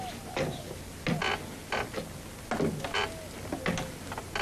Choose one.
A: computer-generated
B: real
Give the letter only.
B